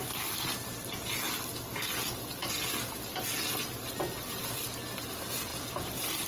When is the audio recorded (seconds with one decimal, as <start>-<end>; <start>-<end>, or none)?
0.0-6.3